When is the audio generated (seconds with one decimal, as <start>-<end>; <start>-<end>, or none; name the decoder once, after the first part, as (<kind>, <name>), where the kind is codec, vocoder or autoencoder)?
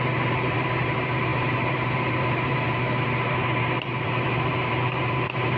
0.0-5.6 (vocoder, BigVGAN v2)